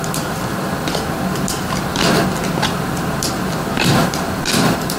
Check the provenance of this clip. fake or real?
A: real